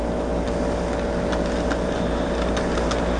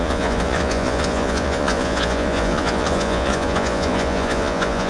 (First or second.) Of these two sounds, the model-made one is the second